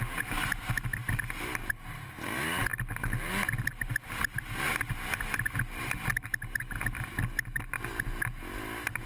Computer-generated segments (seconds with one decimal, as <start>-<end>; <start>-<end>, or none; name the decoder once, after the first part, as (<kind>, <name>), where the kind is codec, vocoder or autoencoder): none